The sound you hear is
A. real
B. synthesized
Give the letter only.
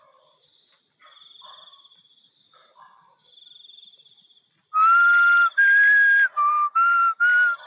A